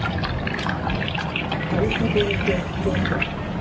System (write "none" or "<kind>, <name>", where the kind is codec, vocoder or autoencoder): none